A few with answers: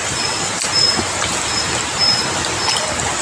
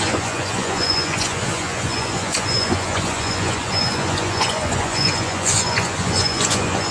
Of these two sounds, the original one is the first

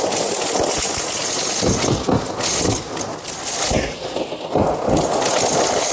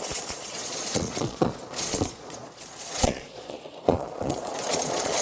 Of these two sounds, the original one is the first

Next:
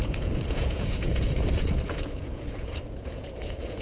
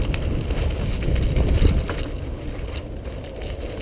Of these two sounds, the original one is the second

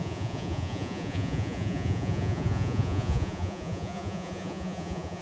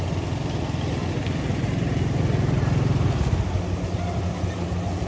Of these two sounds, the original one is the second